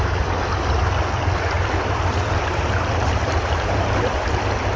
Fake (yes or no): no